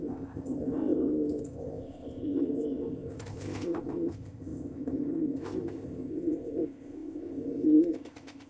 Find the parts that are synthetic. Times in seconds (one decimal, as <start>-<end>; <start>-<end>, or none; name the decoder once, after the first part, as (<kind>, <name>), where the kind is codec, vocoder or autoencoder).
0.0-8.5 (codec, ZipCodec)